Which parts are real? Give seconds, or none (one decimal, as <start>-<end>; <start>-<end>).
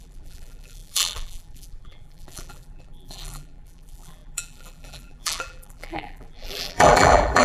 none